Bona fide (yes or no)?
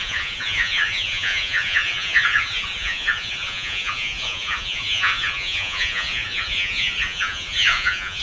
no